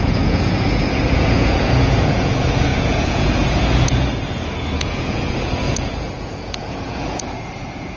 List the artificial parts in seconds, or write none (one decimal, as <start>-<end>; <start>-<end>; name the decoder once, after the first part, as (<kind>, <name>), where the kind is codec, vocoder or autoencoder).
0.0-8.0 (vocoder, Vocos)